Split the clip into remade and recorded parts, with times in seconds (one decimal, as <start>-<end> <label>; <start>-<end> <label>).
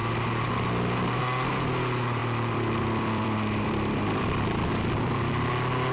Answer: 0.0-2.2 recorded; 2.2-5.5 remade; 5.5-5.9 recorded